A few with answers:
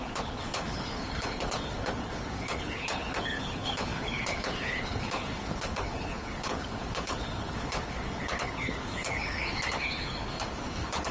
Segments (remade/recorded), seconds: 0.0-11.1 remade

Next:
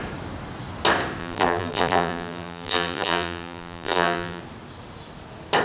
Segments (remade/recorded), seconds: 0.0-1.2 recorded; 1.2-4.4 remade; 4.4-5.6 recorded

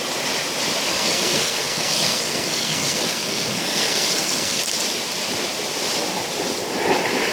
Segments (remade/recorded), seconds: 0.0-0.9 recorded; 0.9-4.6 remade; 4.6-7.3 recorded

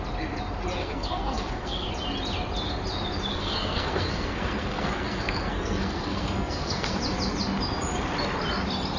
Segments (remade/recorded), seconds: 0.0-0.8 recorded; 0.8-1.9 remade; 1.9-3.3 recorded; 3.3-7.0 remade; 7.0-9.0 recorded

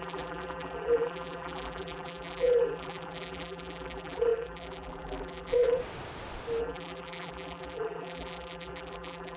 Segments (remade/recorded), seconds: 0.0-5.8 remade; 5.8-6.6 recorded; 6.6-9.4 remade

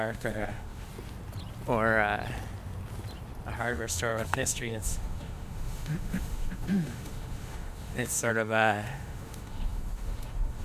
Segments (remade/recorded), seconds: 0.0-0.9 remade; 0.9-3.6 recorded; 3.6-10.6 remade